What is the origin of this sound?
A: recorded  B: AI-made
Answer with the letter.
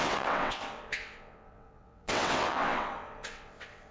B